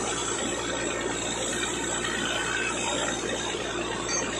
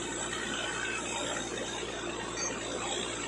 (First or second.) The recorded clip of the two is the second